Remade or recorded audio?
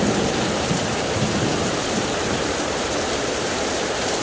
remade